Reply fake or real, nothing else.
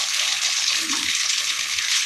fake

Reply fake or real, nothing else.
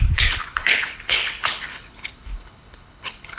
fake